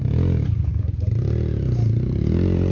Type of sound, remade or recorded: recorded